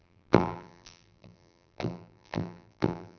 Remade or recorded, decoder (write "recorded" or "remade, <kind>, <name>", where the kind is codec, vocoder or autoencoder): remade, vocoder, BigVGAN v2